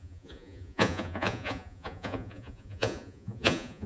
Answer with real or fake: fake